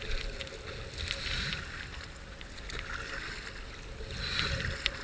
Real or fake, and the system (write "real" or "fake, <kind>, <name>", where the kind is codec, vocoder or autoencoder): real